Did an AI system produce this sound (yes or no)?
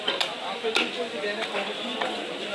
no